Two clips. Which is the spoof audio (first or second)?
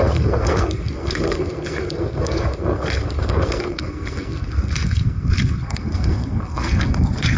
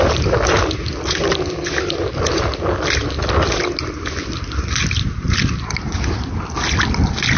first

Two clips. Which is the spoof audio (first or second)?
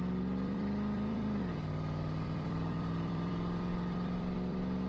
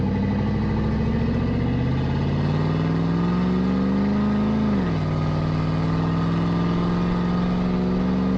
first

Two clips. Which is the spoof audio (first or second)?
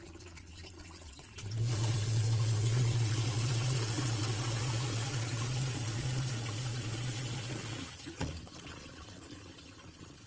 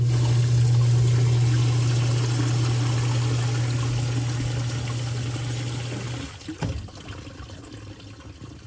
first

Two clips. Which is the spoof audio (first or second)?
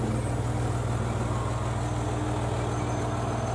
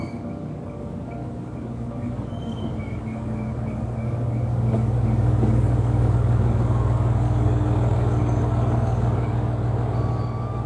second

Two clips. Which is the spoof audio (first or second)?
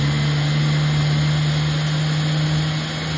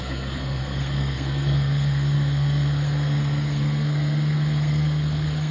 second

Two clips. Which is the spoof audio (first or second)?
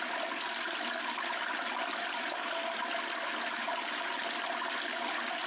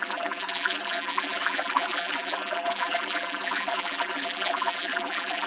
second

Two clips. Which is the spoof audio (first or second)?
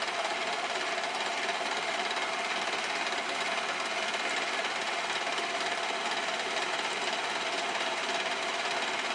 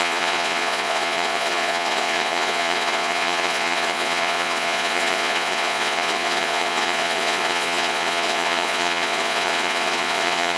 second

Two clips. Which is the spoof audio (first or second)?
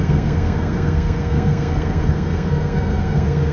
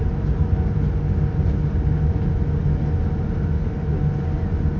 first